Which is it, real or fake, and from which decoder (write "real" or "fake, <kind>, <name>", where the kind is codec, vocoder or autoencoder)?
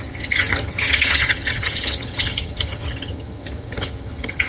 fake, vocoder, HiFi-GAN